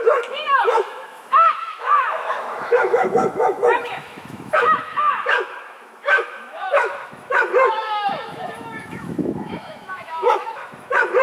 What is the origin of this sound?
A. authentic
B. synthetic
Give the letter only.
B